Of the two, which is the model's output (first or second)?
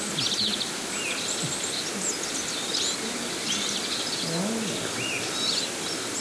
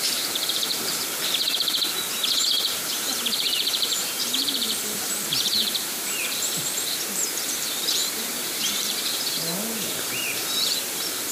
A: second